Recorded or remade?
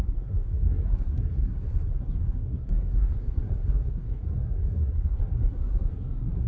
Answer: remade